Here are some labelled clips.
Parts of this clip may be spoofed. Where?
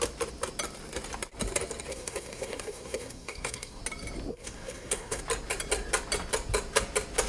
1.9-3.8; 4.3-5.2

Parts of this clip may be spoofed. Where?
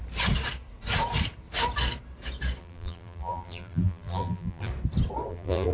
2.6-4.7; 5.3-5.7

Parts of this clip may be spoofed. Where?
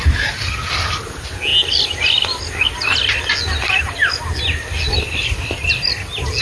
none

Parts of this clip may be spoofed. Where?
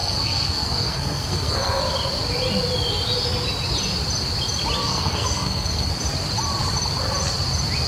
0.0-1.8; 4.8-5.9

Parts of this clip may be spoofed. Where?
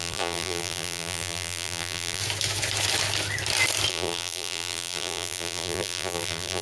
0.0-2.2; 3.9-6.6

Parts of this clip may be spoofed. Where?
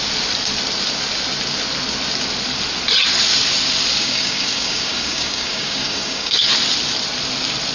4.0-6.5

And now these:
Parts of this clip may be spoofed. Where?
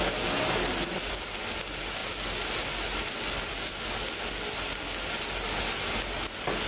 none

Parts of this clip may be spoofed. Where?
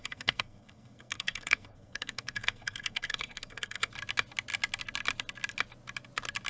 0.0-3.9